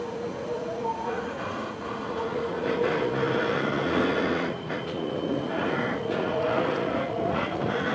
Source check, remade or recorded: remade